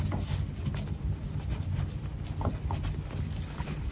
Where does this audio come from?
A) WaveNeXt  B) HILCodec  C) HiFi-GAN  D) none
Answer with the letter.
D